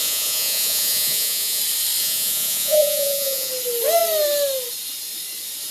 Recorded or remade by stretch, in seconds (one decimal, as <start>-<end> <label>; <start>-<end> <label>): 0.0-1.6 remade; 1.6-2.0 recorded; 2.0-3.5 remade; 3.5-5.7 recorded